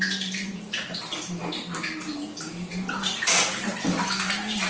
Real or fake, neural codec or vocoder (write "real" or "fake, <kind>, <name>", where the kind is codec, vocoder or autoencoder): real